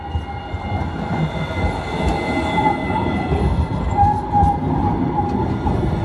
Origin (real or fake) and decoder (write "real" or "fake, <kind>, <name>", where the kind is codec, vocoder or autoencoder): real